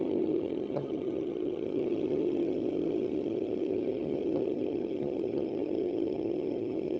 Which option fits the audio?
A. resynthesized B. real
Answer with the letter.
A